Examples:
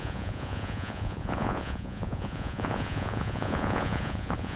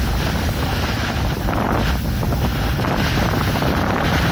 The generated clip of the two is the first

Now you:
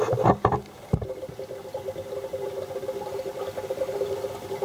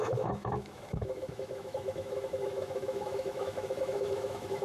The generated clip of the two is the second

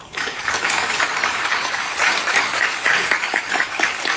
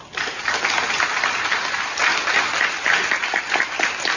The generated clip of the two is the first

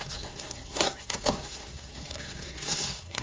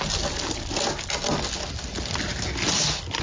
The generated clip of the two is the first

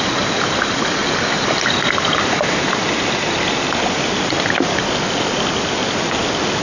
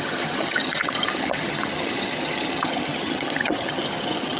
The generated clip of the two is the second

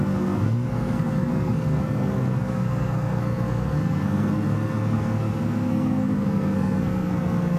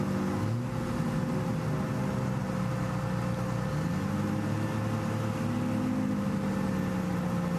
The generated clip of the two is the first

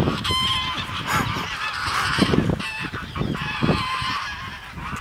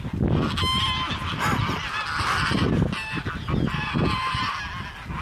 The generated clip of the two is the first